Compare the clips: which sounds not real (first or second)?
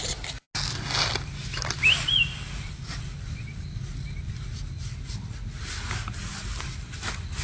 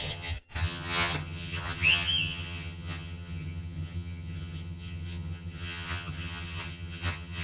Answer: second